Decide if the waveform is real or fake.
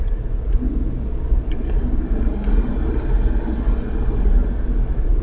real